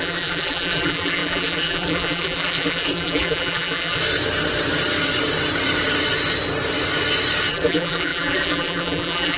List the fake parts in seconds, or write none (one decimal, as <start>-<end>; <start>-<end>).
0.0-4.0; 7.5-9.4